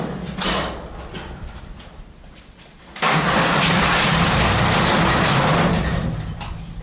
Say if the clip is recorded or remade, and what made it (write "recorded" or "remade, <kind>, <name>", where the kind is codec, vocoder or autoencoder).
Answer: recorded